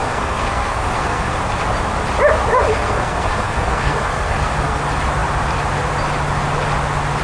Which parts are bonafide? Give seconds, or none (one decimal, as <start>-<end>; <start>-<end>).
1.4-2.7; 4.8-7.2